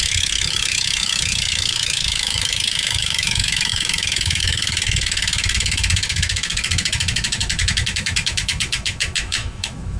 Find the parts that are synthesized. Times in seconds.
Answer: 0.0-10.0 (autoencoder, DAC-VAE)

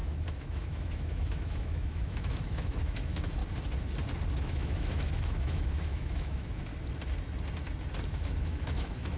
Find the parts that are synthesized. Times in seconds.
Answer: 0.0-3.4 (autoencoder, DAC-VAE); 4.4-6.7; 8.1-9.2

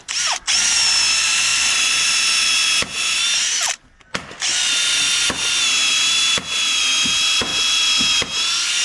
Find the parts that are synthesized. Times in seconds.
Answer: none

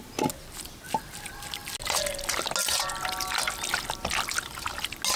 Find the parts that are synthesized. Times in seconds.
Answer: none

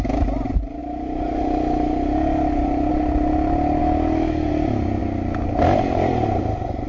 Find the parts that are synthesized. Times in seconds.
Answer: 3.8-4.5 (autoencoder, DAC-VAE)